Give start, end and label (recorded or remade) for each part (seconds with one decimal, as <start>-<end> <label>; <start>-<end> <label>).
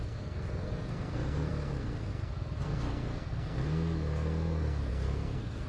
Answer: 0.0-5.7 remade